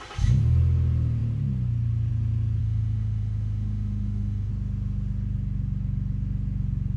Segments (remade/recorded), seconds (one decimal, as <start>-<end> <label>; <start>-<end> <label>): 0.0-2.6 recorded; 2.6-4.5 remade; 4.5-7.0 recorded